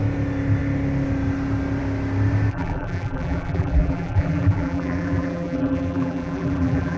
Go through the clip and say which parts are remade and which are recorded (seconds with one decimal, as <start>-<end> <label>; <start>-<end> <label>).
0.0-2.5 recorded; 2.5-7.0 remade